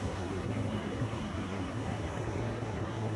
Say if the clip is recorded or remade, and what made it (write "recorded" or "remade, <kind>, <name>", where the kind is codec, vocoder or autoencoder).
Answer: remade, codec, SNAC